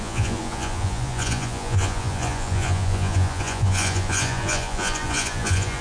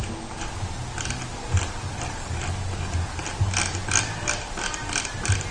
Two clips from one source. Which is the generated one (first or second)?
first